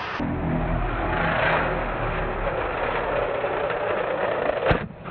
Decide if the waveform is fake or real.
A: real